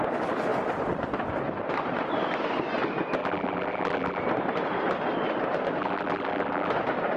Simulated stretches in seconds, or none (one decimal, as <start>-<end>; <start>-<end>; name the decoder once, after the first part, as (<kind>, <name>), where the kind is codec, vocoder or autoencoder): 3.2-4.2 (vocoder, BigVGAN v2); 5.8-6.7

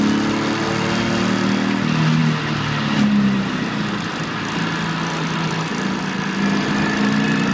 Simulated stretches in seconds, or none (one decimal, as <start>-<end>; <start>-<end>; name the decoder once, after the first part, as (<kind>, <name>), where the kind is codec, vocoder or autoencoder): none